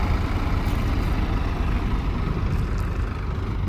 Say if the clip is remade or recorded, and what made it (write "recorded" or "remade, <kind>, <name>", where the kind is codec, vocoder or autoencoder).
recorded